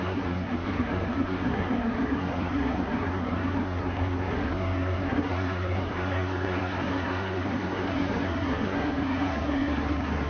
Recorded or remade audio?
remade